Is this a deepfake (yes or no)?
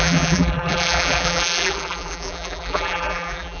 yes